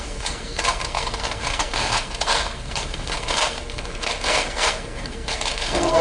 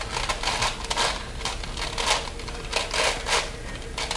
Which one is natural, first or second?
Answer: second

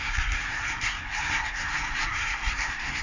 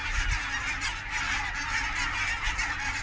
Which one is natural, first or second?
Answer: second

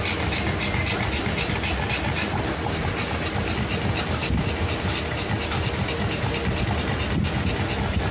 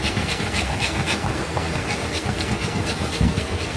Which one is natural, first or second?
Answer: first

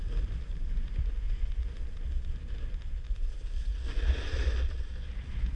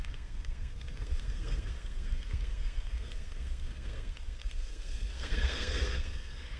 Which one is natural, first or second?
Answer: first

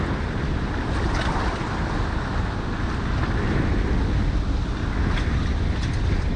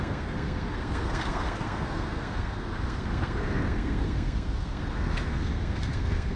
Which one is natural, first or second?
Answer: first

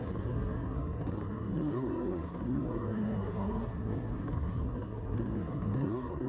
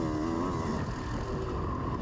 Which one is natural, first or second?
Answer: second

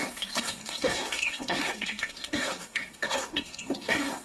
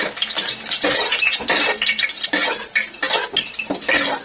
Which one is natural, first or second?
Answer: second